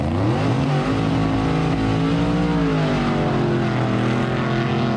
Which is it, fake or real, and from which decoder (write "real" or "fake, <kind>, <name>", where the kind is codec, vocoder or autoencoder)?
real